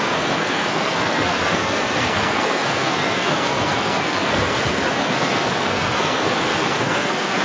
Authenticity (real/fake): fake